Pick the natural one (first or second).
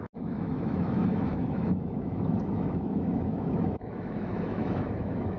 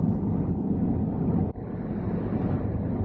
second